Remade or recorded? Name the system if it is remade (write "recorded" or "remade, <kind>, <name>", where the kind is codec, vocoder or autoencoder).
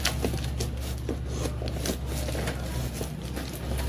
recorded